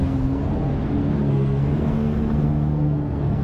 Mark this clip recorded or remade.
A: remade